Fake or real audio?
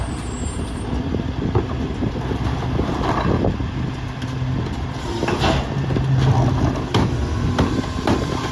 real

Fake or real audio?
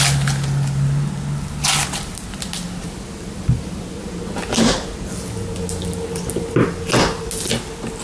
real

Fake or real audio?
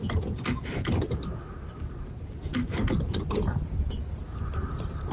real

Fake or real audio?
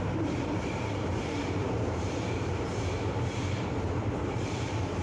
fake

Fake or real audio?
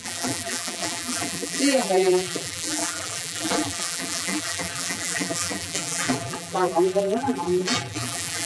fake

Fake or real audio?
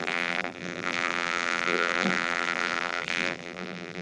fake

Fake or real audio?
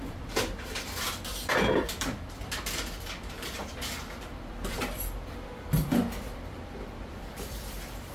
fake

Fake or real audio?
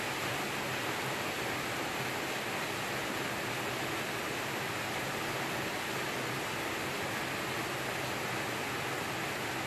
real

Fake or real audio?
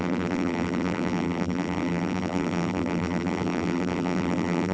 fake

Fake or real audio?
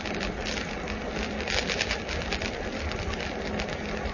fake